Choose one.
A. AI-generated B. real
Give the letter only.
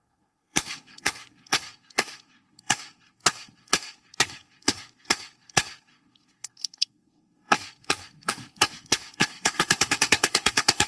A